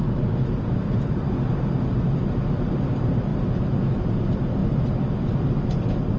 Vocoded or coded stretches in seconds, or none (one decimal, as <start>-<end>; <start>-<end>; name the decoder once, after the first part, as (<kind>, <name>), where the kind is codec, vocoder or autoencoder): none